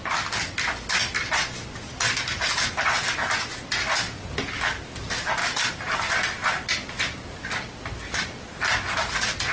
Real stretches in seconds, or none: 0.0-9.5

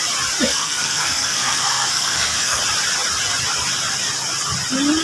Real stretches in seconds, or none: 0.0-0.5; 2.6-5.0

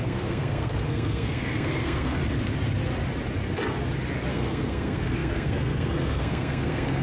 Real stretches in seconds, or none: 2.2-4.3